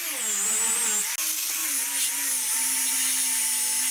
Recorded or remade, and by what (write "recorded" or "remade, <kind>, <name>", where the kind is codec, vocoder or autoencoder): recorded